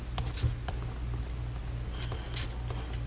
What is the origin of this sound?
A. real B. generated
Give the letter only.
A